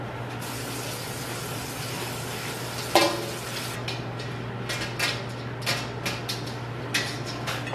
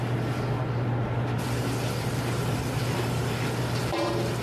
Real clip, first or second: first